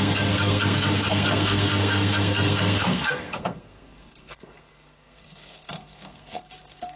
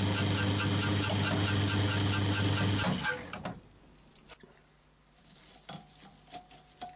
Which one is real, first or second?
second